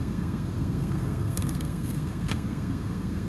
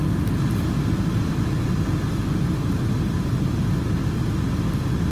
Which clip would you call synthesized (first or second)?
first